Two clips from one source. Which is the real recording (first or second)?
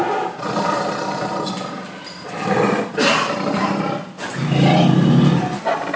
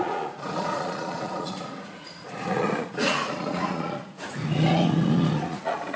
first